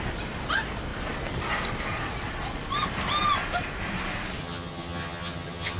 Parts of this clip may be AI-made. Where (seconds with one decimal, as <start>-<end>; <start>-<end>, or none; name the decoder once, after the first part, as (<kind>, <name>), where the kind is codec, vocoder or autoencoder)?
4.4-5.8 (vocoder, HiFi-GAN)